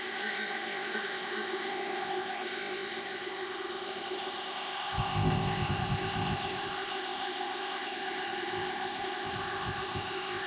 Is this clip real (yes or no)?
no